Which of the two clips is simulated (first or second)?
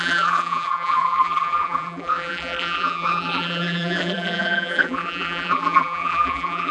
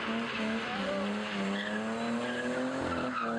first